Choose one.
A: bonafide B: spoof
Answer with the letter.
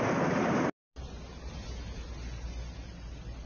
A